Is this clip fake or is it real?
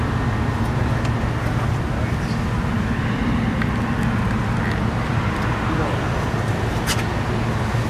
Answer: real